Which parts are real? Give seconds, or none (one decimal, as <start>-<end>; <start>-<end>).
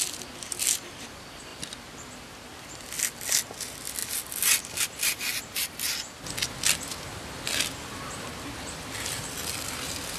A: 0.0-10.2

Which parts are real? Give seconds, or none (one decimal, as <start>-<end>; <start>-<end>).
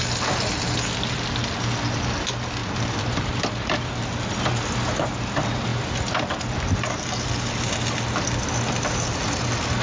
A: 0.0-9.8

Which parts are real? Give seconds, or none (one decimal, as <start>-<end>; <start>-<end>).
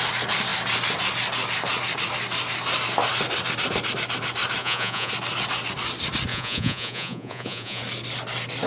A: 0.0-4.6; 5.1-6.3; 7.8-8.7